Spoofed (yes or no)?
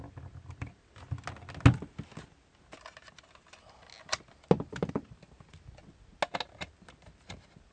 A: no